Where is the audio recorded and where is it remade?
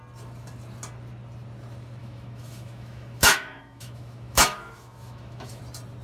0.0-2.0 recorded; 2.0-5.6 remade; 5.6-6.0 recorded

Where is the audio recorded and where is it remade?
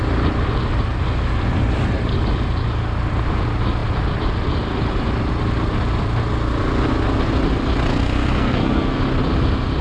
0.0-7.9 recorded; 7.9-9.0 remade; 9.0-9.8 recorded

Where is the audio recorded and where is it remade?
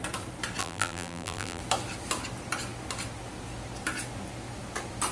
0.0-0.6 recorded; 0.6-1.6 remade; 1.6-5.1 recorded